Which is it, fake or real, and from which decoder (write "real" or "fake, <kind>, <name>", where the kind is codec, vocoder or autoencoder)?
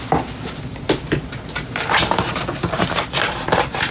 real